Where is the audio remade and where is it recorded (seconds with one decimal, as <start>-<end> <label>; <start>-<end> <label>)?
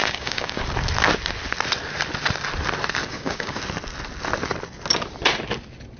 0.0-0.6 remade; 0.6-3.0 recorded; 3.0-3.6 remade; 3.6-6.0 recorded